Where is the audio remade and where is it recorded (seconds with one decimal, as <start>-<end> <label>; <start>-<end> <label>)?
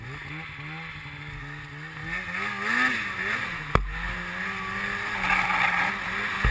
0.0-6.5 recorded